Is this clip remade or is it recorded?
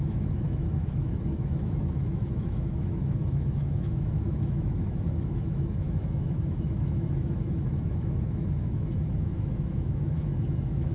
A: remade